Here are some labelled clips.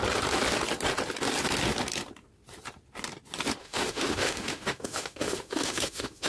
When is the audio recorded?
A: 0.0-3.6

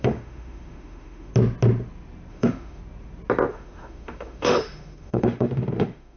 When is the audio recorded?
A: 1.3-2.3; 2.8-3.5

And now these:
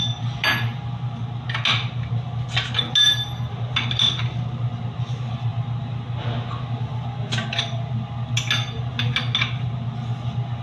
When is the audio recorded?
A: 0.0-10.6